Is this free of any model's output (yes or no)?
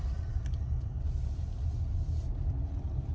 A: yes